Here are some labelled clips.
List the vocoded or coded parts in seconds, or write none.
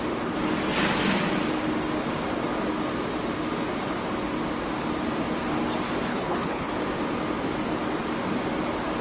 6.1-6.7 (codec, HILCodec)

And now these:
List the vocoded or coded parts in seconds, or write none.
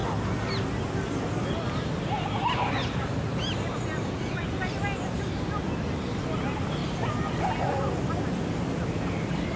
none